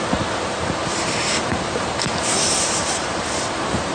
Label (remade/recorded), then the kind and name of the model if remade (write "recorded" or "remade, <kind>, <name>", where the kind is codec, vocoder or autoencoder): remade, vocoder, BigVGAN v2